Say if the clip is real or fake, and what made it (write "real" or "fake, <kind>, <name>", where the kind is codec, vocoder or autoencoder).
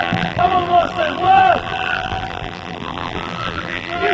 fake, vocoder, BigVGAN v2